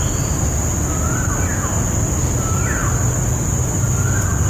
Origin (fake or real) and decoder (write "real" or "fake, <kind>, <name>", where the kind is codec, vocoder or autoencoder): fake, vocoder, BigVGAN v2